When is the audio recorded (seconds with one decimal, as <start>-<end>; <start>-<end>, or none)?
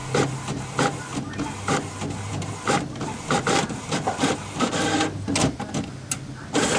0.0-6.8